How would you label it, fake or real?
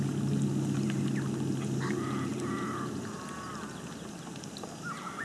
real